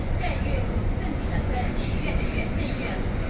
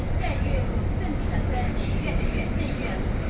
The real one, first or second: second